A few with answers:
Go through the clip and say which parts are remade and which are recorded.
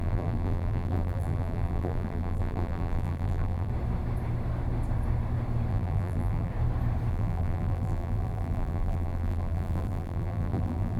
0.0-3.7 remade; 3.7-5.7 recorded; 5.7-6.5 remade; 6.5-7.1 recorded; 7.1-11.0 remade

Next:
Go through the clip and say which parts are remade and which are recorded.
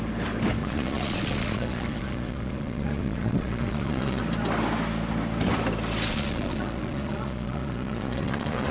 0.0-0.6 recorded; 0.6-4.2 remade; 4.2-6.1 recorded; 6.1-8.7 remade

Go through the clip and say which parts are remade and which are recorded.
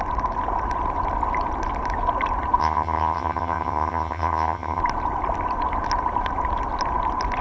0.0-2.6 recorded; 2.6-4.8 remade; 4.8-7.4 recorded